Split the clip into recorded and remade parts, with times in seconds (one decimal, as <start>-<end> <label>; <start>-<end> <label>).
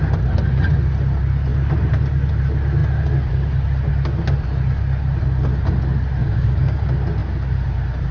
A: 0.0-6.2 recorded; 6.2-6.8 remade; 6.8-8.1 recorded